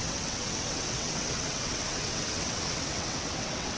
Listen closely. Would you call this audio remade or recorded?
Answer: remade